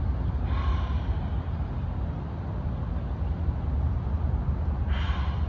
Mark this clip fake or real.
real